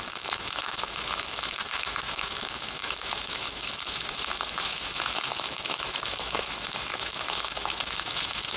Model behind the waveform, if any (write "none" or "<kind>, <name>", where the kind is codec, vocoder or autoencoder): autoencoder, DAC-VAE